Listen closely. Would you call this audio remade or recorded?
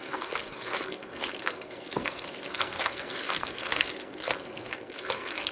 remade